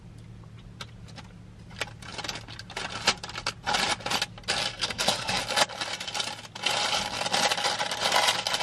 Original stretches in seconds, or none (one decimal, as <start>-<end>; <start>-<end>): 0.0-4.7; 5.4-8.6